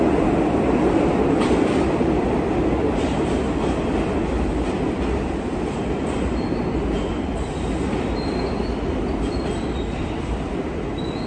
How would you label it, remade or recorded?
recorded